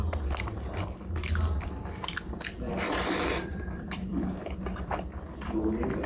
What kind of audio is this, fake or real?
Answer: fake